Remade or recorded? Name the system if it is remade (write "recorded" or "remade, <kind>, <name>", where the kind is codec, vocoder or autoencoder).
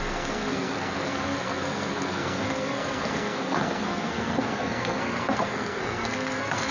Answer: remade, codec, SNAC